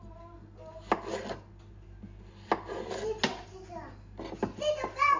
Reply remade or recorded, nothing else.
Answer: recorded